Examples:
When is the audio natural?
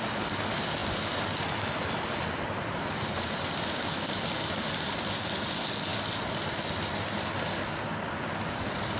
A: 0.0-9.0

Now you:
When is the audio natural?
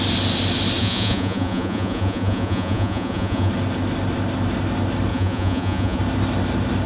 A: 0.0-0.8; 3.5-5.1; 6.0-6.9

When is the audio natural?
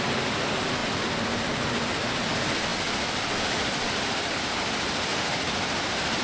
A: 0.0-6.2